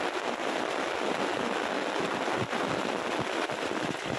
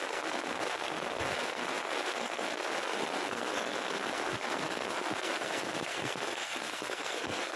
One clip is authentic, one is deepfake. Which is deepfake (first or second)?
second